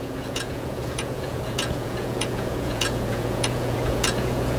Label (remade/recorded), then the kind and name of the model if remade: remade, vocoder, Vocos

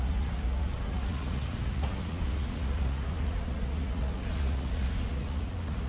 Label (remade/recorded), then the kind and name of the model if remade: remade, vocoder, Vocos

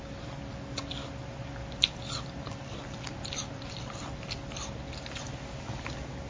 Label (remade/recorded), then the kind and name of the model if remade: recorded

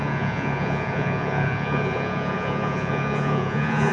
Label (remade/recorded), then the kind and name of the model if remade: remade, vocoder, Vocos